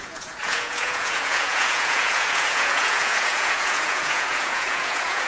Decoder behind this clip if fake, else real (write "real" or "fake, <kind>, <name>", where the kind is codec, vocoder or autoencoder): fake, vocoder, Vocos